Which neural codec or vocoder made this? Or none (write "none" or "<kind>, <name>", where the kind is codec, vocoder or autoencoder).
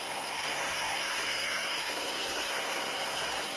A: codec, SNAC